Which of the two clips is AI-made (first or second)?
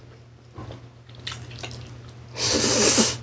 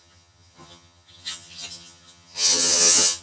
second